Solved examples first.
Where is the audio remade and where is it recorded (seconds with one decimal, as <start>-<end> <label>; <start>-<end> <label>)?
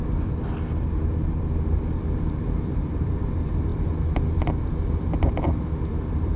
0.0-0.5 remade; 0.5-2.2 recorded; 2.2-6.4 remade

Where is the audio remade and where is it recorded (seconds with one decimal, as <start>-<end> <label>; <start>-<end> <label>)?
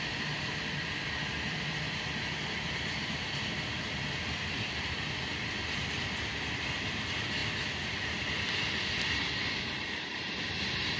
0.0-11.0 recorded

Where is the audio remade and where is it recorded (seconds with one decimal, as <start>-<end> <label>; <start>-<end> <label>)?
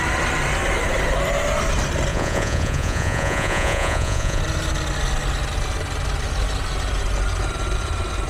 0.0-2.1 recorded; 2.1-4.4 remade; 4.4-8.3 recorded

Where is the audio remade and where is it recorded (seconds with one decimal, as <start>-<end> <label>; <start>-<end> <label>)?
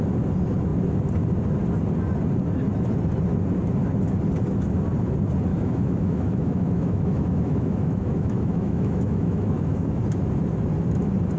0.0-5.5 recorded; 5.5-10.0 remade; 10.0-11.4 recorded